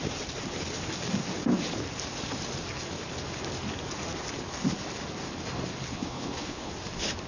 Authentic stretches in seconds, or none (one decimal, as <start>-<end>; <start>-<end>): 0.0-5.9; 6.7-7.3